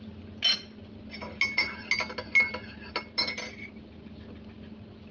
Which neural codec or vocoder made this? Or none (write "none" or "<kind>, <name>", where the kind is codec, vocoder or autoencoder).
none